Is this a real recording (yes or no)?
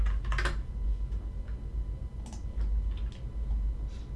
yes